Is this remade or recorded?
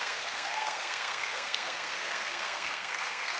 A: remade